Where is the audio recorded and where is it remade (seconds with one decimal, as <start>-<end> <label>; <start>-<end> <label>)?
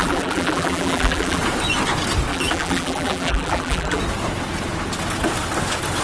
0.0-1.4 remade; 1.4-2.3 recorded; 2.3-4.0 remade; 4.0-6.0 recorded